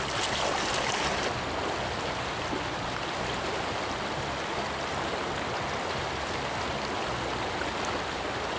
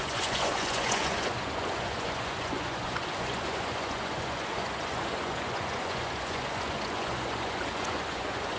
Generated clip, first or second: second